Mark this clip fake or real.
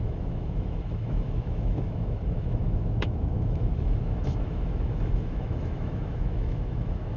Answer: fake